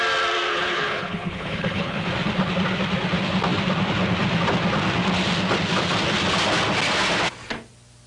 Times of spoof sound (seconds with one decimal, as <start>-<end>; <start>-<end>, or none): 0.5-2.0